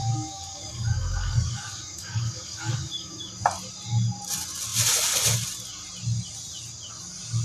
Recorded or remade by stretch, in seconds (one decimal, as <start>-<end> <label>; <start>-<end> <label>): 0.0-3.3 remade; 3.3-7.4 recorded